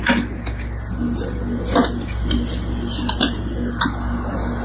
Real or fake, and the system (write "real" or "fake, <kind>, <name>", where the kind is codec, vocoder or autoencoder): real